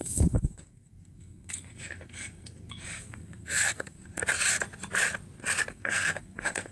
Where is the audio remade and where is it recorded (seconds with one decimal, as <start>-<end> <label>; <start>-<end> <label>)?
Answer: 0.0-4.2 remade; 4.2-5.7 recorded; 5.7-6.7 remade